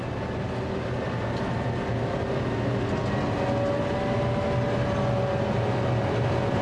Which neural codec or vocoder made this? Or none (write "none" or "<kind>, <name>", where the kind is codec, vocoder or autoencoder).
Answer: none